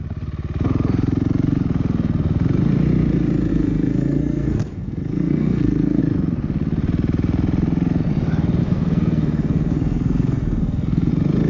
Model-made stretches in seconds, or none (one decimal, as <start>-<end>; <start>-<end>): 3.5-6.0; 8.6-11.1